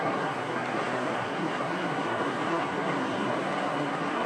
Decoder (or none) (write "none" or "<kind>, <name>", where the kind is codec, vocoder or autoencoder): codec, SNAC